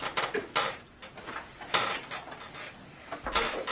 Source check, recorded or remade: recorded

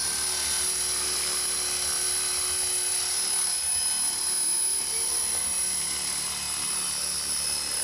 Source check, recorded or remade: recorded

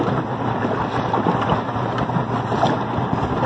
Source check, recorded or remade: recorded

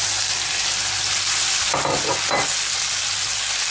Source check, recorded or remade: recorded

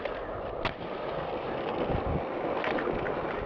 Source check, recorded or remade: recorded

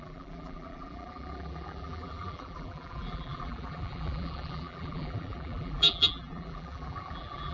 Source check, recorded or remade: remade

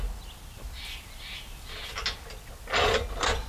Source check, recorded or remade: recorded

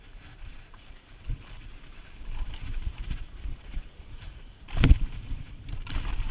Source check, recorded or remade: remade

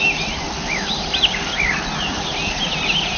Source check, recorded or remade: recorded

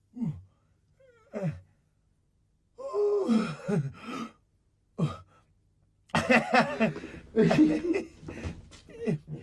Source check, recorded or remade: recorded